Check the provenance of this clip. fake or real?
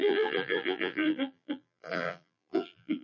fake